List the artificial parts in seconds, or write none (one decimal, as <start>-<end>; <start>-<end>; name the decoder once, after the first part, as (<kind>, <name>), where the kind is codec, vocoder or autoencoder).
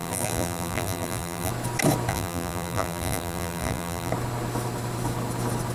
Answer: 0.0-1.5 (vocoder, BigVGAN v2); 2.1-4.1